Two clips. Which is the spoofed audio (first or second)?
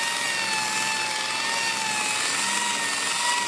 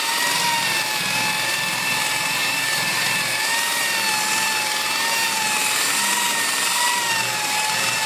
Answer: second